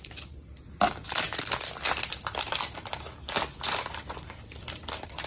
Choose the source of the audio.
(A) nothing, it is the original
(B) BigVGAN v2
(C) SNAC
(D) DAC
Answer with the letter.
A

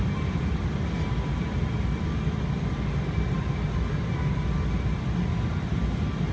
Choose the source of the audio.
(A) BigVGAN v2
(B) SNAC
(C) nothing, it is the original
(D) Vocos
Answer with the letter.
C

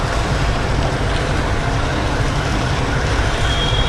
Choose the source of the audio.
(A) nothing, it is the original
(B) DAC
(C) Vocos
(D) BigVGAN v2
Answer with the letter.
D